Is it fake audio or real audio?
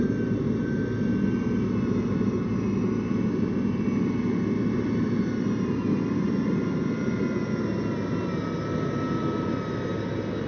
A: real